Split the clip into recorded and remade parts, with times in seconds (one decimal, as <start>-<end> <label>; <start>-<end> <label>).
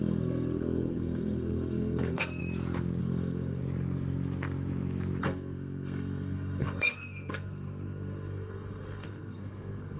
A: 0.0-2.4 remade; 2.4-3.0 recorded; 3.0-3.6 remade; 3.6-5.2 recorded; 5.2-10.0 remade